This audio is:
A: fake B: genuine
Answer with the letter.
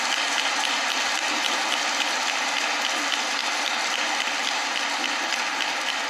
B